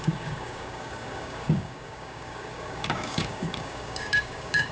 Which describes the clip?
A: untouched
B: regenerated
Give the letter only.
B